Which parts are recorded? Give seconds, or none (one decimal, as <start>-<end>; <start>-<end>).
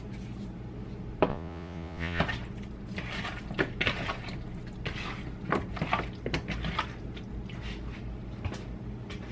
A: 0.0-1.3; 2.2-9.3